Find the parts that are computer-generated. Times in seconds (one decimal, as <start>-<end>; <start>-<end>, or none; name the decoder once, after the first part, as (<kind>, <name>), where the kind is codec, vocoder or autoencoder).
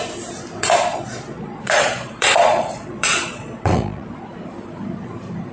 0.9-4.1 (vocoder, Vocos)